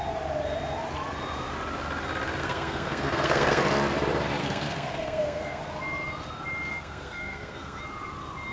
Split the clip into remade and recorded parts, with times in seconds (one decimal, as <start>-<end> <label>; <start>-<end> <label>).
0.0-2.4 recorded; 2.4-3.6 remade; 3.6-4.4 recorded; 4.4-5.6 remade; 5.6-6.7 recorded; 6.7-7.8 remade; 7.8-8.5 recorded